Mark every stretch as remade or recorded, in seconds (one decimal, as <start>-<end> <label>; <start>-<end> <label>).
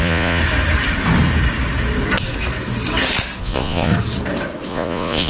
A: 0.0-0.4 remade; 0.4-3.4 recorded; 3.4-3.9 remade; 3.9-4.7 recorded; 4.7-5.3 remade